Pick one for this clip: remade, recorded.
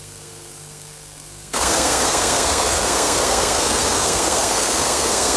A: remade